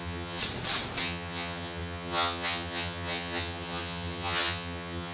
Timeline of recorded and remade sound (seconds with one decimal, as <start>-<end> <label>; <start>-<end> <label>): 0.0-0.4 remade; 0.4-1.0 recorded; 1.0-5.1 remade